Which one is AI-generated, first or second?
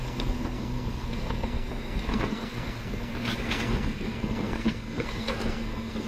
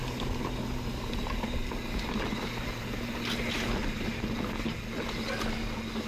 first